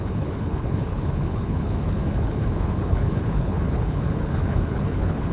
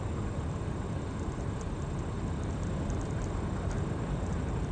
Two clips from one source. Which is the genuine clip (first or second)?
second